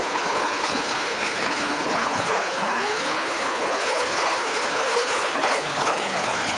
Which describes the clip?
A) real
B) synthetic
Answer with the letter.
B